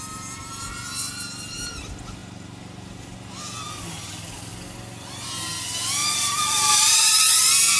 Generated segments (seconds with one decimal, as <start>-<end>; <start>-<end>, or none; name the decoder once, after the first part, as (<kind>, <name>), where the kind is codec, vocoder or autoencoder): 6.0-7.8 (vocoder, BigVGAN v2)